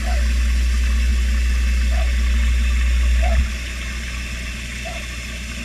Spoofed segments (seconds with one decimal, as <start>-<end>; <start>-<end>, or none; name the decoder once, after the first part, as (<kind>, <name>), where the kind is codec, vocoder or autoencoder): none